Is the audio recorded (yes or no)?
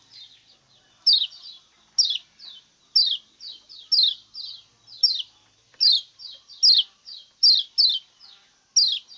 yes